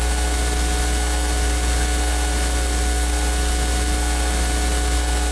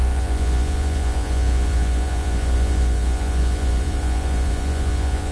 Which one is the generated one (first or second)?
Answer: second